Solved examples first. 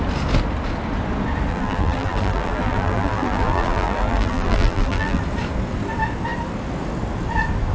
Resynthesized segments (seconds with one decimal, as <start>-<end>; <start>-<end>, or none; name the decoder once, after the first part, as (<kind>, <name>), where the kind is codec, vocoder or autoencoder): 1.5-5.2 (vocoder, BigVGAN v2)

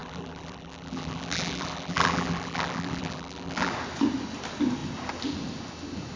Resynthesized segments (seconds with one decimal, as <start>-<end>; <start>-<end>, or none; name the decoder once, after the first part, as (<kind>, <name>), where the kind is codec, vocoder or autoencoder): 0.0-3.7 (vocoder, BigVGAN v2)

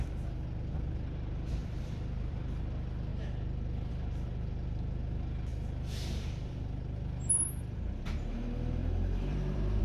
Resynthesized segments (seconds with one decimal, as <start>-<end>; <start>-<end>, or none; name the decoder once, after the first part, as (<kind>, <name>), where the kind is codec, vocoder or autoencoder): 1.6-2.6 (vocoder, BigVGAN v2); 8.8-9.8

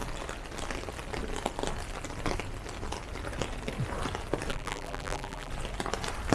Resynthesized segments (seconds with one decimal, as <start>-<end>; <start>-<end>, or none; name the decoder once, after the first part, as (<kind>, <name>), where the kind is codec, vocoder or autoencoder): 4.5-5.5 (vocoder, BigVGAN v2)